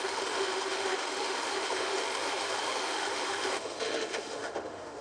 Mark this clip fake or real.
fake